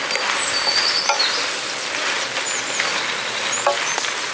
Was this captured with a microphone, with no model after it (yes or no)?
yes